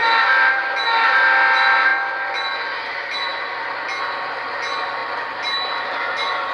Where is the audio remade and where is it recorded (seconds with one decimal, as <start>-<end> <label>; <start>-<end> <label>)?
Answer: 0.0-6.5 recorded